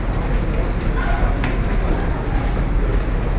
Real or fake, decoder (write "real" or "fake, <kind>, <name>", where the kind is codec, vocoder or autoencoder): real